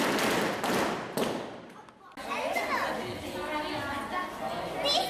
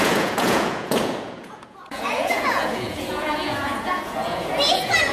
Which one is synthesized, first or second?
second